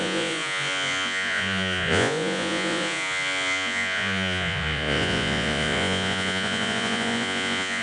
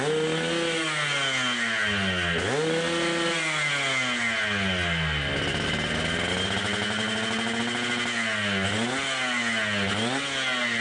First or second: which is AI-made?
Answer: first